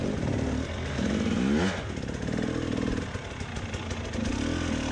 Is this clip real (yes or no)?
yes